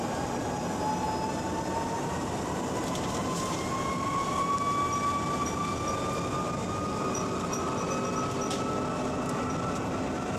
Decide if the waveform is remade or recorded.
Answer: recorded